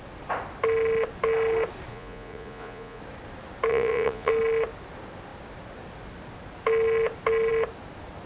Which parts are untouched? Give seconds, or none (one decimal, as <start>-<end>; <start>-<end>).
0.0-1.9; 3.0-3.7; 4.3-8.3